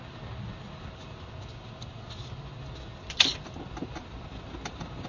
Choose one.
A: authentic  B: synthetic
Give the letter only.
A